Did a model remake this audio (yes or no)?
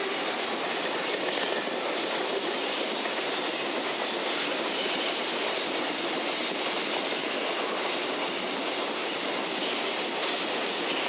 no